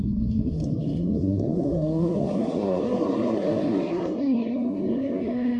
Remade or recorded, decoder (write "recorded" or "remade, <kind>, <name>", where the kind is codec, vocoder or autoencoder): remade, codec, SNAC